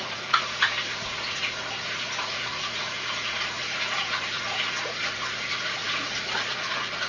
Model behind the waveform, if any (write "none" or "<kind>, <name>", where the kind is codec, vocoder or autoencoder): vocoder, Vocos